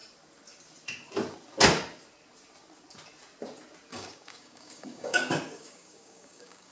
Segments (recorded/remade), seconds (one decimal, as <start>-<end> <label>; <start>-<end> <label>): 0.0-3.9 recorded; 3.9-6.7 remade

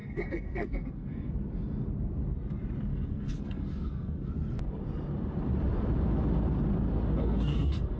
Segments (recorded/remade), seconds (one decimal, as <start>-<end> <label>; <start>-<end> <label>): 0.0-1.3 remade; 1.3-2.9 recorded; 2.9-4.3 remade; 4.3-7.2 recorded; 7.2-8.0 remade

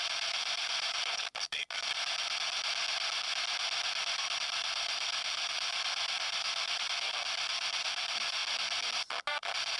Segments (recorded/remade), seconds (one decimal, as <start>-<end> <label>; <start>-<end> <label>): 0.0-1.6 remade; 1.6-4.0 recorded; 4.0-8.4 remade; 8.4-9.4 recorded; 9.4-9.8 remade

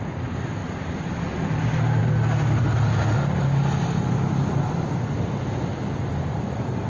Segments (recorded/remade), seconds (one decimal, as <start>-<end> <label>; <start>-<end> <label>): 0.0-0.6 recorded; 0.6-1.2 remade; 1.2-6.9 recorded